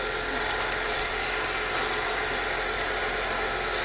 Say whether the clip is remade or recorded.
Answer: recorded